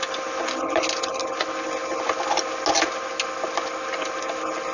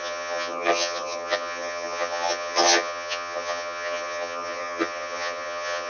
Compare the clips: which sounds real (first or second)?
first